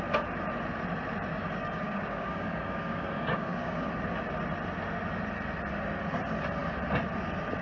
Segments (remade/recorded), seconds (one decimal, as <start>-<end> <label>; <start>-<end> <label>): 0.0-1.3 recorded; 1.3-3.9 remade; 3.9-7.6 recorded